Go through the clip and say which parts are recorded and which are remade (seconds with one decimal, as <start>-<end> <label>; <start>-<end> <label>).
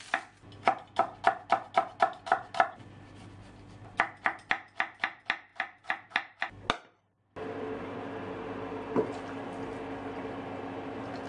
0.0-5.5 recorded; 5.5-6.5 remade; 6.5-11.3 recorded